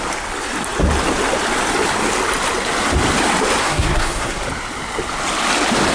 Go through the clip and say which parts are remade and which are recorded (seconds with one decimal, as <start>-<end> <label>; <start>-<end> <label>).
0.0-3.6 recorded; 3.6-4.4 remade; 4.4-5.9 recorded